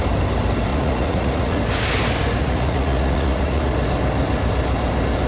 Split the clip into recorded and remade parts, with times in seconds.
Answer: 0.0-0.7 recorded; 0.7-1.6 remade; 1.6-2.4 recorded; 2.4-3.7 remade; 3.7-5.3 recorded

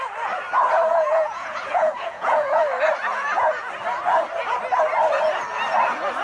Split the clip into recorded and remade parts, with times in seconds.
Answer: 0.0-0.9 recorded; 0.9-2.6 remade; 2.6-3.0 recorded; 3.0-3.7 remade; 3.7-6.2 recorded